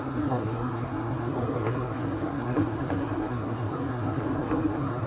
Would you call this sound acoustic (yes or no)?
no